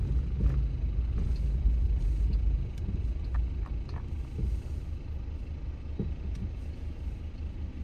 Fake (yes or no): no